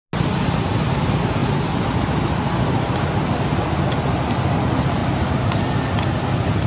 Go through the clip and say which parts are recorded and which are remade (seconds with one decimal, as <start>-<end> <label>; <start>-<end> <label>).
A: 0.0-5.0 recorded; 5.0-5.6 remade; 5.6-6.7 recorded